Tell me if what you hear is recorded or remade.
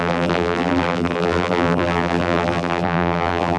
remade